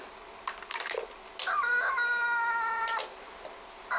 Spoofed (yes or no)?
no